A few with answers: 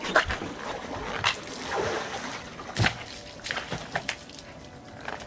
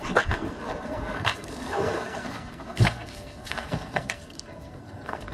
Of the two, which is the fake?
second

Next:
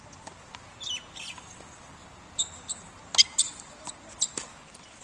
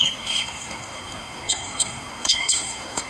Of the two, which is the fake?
second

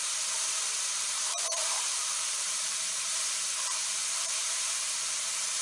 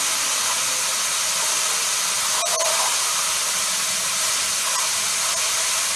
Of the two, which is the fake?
first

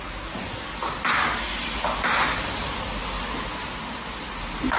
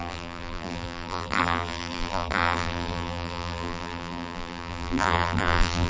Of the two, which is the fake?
second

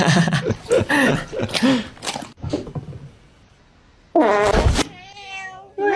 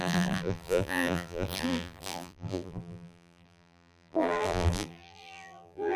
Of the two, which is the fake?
second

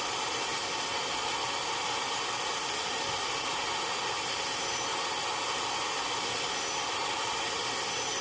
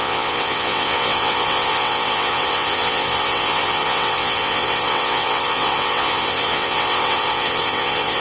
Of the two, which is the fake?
second